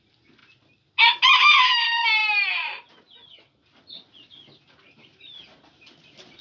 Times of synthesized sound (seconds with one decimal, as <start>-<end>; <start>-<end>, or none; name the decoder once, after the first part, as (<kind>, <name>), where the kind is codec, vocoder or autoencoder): none

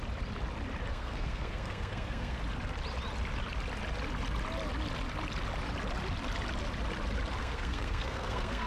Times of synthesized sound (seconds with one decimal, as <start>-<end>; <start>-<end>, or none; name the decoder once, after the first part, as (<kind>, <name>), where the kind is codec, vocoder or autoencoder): 0.9-2.4 (codec, SNAC); 7.4-8.7

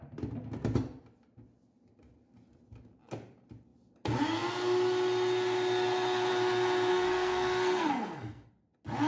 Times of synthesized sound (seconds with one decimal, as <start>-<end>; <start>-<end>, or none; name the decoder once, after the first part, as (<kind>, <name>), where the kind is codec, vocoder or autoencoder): 6.9-8.5 (codec, SNAC)

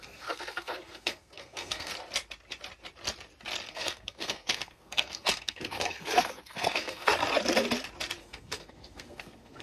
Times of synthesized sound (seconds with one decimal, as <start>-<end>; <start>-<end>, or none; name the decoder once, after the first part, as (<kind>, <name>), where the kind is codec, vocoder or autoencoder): 0.0-1.9 (codec, SNAC); 3.7-7.1; 8.2-9.6